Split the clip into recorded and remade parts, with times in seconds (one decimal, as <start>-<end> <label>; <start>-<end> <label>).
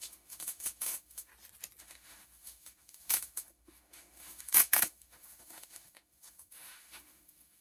0.0-1.3 remade; 1.3-1.8 recorded; 1.8-7.6 remade